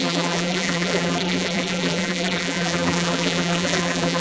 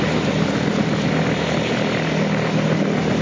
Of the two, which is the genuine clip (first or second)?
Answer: second